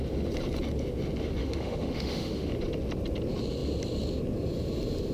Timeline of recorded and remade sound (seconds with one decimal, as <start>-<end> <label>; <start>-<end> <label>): 0.0-1.4 recorded; 1.4-2.5 remade; 2.5-5.1 recorded